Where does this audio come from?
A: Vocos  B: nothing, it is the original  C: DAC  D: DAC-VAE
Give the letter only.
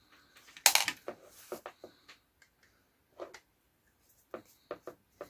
B